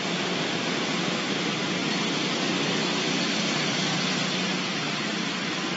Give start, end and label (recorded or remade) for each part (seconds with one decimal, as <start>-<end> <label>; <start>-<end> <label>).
0.0-5.8 recorded